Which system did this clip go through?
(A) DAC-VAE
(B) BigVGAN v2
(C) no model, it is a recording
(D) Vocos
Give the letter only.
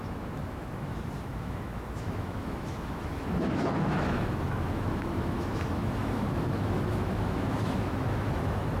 A